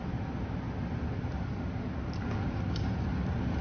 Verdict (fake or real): real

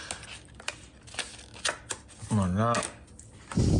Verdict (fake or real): real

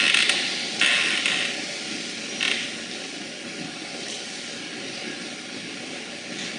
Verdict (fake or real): real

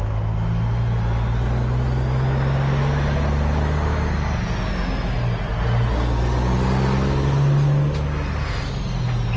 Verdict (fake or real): real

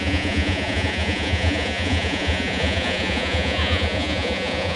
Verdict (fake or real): fake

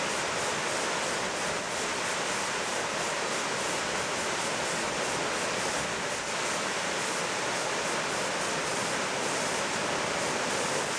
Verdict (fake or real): real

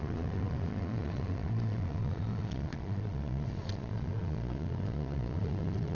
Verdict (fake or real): fake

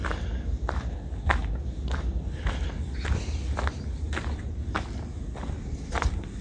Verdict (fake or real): real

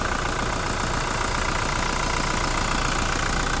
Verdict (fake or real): real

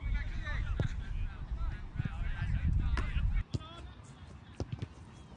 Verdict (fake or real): real